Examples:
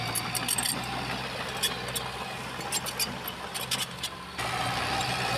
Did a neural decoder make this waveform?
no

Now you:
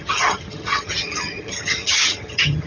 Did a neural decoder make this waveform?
yes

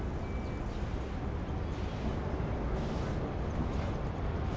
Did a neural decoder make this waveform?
no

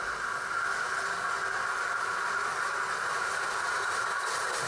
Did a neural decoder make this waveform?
no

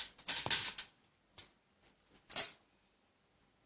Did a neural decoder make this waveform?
no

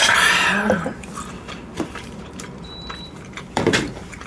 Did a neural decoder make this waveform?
yes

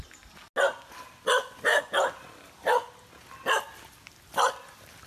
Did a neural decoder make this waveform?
no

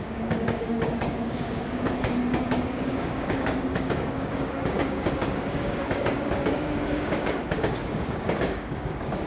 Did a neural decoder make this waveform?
yes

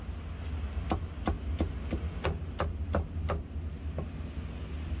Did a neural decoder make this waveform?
no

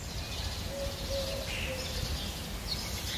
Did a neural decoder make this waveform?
no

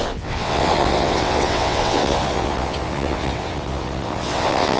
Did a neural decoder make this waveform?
yes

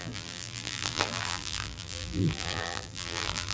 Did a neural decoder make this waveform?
yes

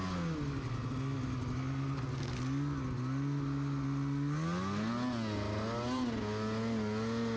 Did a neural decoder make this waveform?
no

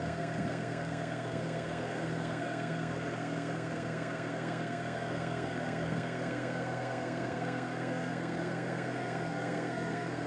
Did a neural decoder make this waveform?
yes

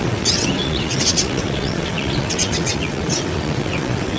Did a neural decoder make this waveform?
yes